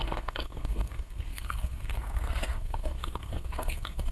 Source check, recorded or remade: remade